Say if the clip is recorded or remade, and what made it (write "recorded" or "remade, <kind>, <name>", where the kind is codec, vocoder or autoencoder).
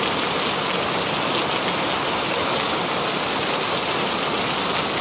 recorded